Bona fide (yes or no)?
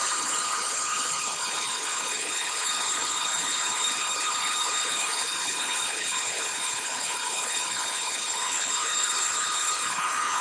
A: no